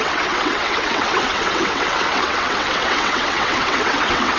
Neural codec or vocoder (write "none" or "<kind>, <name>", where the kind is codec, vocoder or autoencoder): vocoder, WaveNeXt